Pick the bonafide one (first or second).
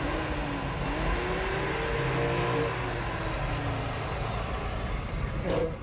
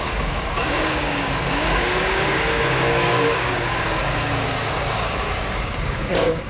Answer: first